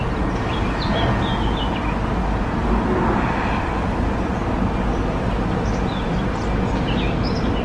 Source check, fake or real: real